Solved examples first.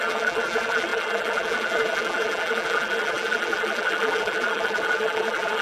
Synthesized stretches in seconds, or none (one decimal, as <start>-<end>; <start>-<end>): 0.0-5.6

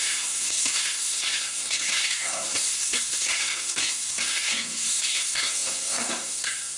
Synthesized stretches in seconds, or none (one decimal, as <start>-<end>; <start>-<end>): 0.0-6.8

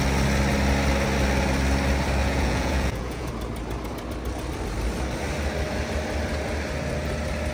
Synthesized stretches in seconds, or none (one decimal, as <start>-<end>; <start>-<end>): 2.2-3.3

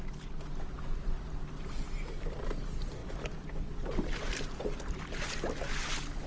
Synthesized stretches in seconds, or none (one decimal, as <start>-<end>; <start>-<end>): none